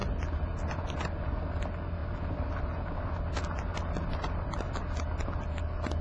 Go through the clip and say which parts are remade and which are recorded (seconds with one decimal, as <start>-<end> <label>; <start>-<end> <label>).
0.0-6.0 recorded

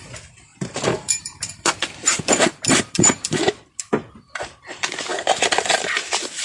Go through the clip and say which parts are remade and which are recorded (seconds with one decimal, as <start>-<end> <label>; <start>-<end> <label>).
0.0-0.5 recorded; 0.5-3.4 remade; 3.4-6.4 recorded

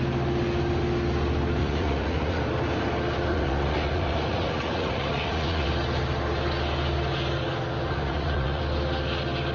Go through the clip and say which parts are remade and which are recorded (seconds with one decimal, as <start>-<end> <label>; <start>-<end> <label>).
0.0-1.6 recorded; 1.6-2.4 remade; 2.4-3.3 recorded; 3.3-5.7 remade; 5.7-7.9 recorded; 7.9-8.6 remade; 8.6-9.5 recorded

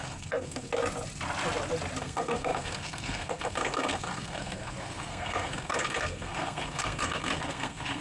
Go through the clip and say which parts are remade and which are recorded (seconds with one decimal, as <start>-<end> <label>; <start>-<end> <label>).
0.0-0.7 remade; 0.7-2.0 recorded; 2.0-8.0 remade

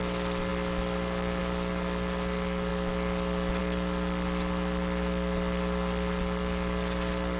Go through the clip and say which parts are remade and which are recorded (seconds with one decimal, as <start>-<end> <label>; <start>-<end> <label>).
0.0-7.4 recorded

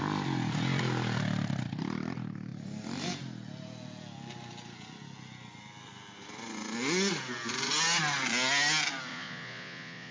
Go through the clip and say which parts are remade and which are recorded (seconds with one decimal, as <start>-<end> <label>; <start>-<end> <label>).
0.0-9.1 recorded; 9.1-10.1 remade

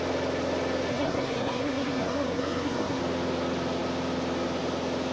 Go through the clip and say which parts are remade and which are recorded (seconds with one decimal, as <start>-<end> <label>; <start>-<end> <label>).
0.0-0.9 recorded; 0.9-3.0 remade; 3.0-5.1 recorded

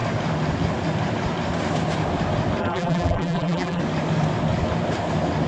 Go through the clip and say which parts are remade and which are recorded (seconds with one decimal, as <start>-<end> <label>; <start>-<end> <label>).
0.0-2.6 recorded; 2.6-3.8 remade; 3.8-5.5 recorded